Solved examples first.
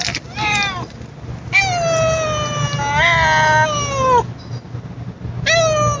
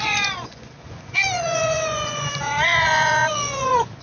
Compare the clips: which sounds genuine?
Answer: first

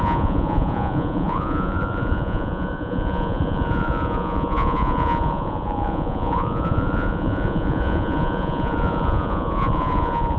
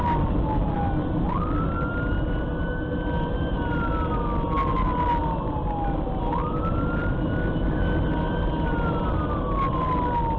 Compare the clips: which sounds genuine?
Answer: second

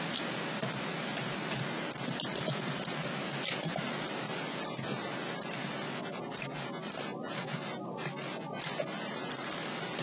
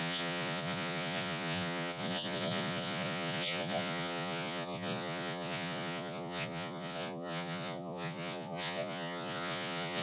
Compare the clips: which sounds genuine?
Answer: first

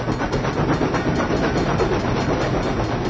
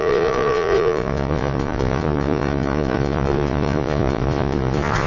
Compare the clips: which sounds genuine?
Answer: first